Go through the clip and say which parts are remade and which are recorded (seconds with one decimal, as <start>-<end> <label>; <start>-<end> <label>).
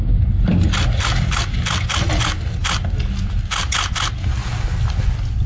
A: 0.0-5.5 recorded